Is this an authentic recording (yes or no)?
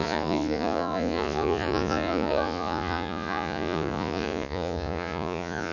no